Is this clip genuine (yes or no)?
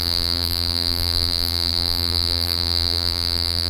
no